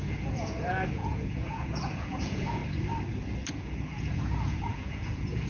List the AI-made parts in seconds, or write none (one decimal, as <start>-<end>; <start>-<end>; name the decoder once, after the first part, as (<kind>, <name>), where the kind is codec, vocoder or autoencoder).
0.0-2.6 (vocoder, Vocos); 3.5-5.5